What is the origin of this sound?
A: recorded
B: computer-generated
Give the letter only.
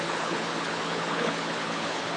B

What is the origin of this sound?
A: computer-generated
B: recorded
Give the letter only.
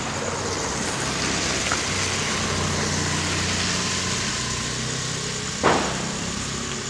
B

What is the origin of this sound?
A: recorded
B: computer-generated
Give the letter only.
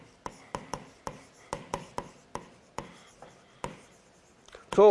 A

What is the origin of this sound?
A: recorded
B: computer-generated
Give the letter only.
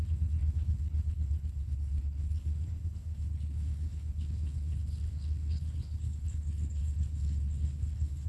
B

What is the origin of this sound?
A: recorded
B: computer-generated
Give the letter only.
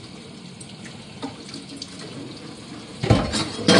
A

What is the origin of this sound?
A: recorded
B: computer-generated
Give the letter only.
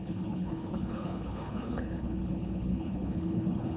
B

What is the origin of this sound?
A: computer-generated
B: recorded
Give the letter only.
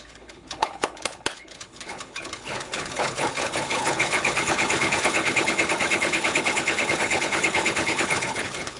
A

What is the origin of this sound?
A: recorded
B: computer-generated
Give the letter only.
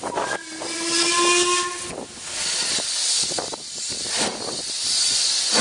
A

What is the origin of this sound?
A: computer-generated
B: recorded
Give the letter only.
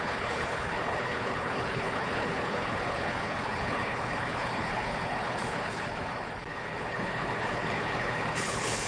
A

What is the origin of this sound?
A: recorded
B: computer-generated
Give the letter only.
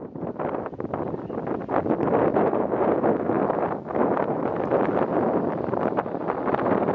A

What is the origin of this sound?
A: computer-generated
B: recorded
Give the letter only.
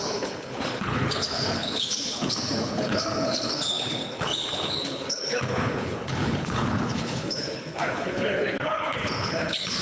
A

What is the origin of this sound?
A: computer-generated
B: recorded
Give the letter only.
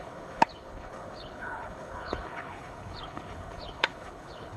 A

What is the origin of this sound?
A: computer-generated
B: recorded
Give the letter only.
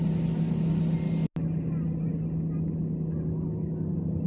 B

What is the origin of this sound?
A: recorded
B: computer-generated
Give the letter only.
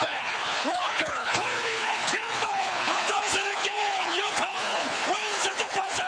B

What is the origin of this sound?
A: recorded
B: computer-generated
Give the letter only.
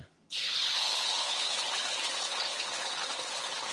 B